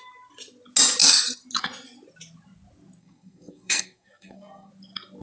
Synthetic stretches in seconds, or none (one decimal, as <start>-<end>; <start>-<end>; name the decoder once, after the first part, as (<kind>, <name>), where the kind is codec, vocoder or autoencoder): 3.0-4.7 (codec, SNAC)